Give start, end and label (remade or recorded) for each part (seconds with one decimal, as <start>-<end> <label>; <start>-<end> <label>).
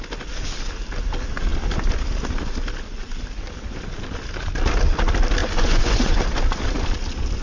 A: 0.0-5.4 recorded; 5.4-6.2 remade; 6.2-7.4 recorded